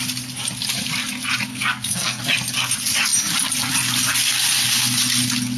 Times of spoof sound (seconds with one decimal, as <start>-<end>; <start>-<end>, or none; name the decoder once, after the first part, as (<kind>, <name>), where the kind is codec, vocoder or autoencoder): 1.5-2.2 (codec, SNAC)